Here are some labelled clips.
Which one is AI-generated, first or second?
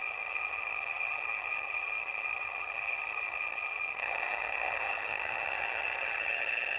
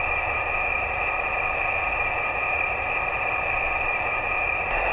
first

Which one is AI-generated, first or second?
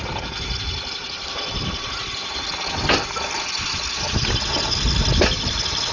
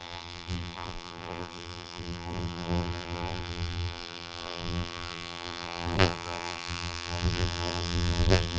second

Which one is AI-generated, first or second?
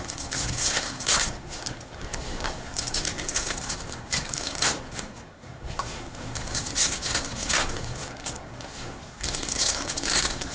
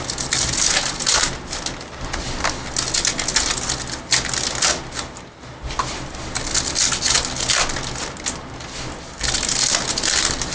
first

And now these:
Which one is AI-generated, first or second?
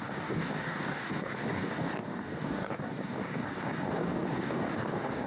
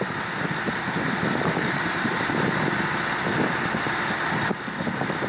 first